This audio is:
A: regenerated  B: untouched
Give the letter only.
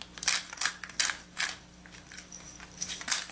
B